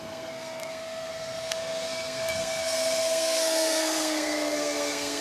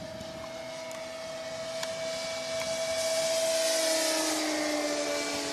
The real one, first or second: second